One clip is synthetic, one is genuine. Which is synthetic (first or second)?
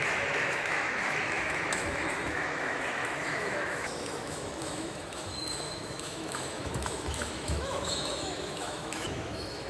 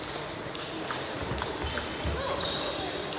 first